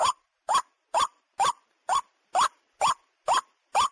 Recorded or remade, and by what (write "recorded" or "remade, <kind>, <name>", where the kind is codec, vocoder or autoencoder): recorded